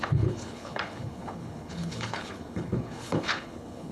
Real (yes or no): no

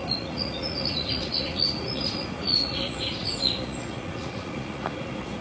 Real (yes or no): no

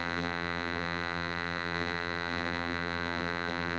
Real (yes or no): no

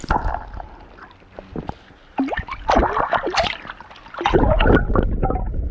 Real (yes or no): yes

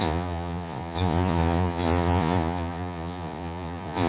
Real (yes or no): no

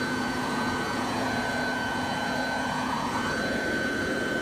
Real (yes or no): no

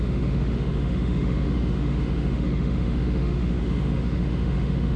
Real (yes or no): no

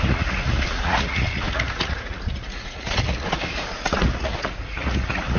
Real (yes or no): no